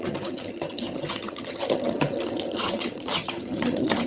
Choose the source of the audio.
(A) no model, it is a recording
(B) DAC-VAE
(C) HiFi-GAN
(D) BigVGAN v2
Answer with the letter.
C